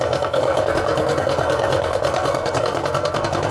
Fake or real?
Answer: fake